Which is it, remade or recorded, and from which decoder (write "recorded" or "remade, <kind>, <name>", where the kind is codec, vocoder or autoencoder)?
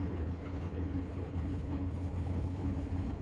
remade, codec, HILCodec